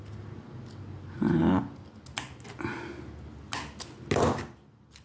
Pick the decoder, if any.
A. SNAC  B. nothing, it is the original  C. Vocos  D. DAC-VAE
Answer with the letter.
B